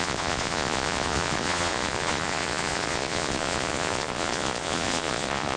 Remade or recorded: remade